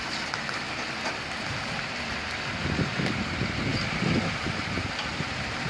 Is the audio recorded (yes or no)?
yes